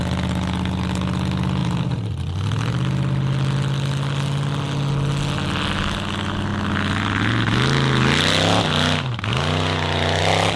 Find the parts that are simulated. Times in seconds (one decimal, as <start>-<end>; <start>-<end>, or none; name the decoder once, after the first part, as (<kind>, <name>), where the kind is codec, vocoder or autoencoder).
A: 1.6-2.1 (vocoder, BigVGAN v2)